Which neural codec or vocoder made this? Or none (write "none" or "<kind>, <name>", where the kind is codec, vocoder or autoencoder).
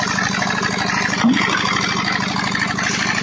none